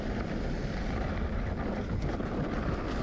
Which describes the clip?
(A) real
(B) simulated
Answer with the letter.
A